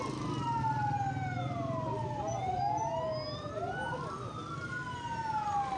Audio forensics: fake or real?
real